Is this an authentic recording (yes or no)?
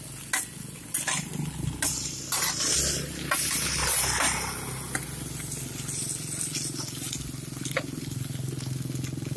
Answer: yes